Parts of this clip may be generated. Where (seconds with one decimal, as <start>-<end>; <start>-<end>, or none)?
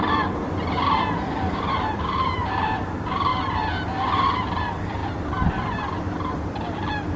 0.0-3.3; 4.4-5.0; 5.7-7.2